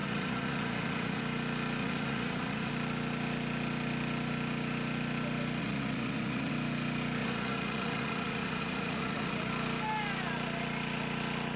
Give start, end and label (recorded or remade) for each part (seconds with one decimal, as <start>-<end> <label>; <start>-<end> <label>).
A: 0.0-1.2 remade; 1.2-1.8 recorded; 1.8-2.7 remade; 2.7-5.6 recorded; 5.6-6.5 remade; 6.5-7.2 recorded; 7.2-9.5 remade; 9.5-11.6 recorded